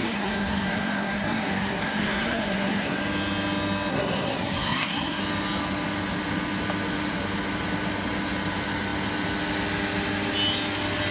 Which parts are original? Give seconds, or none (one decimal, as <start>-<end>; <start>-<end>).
3.0-3.9; 5.2-11.1